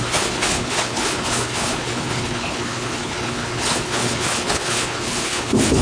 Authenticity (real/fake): fake